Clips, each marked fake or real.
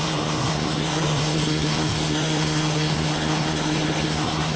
fake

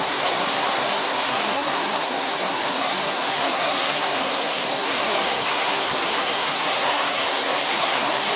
fake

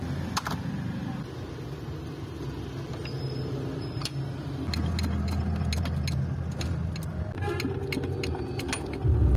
real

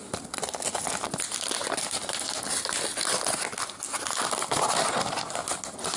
real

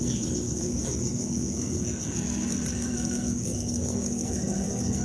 fake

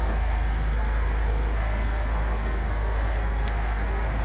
fake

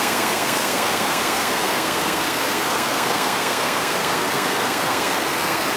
fake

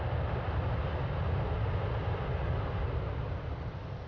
real